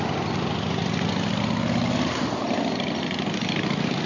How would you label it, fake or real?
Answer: real